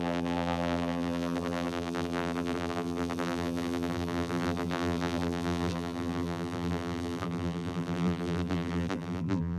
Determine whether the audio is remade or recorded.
remade